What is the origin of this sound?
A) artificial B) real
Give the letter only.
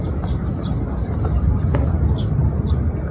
B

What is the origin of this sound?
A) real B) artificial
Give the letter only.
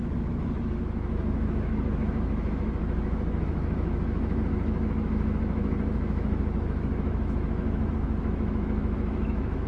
B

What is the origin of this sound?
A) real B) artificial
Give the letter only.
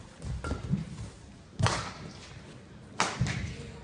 A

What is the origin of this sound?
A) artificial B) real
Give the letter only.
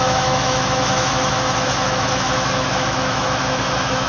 A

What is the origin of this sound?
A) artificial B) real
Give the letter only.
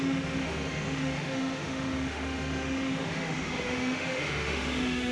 A